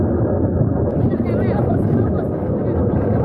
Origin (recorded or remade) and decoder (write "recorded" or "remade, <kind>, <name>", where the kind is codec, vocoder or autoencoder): recorded